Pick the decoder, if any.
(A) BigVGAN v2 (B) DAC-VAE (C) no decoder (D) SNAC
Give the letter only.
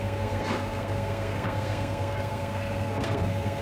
D